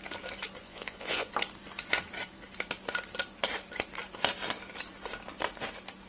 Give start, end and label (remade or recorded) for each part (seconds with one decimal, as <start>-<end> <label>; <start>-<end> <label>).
0.0-0.6 recorded; 0.6-1.3 remade; 1.3-6.1 recorded